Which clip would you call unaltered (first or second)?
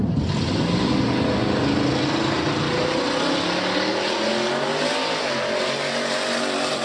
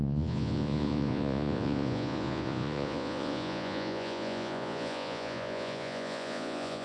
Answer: first